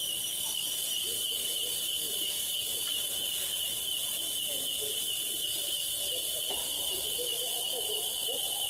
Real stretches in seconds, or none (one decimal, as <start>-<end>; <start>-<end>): 0.0-8.7